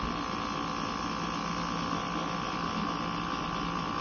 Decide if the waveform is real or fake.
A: real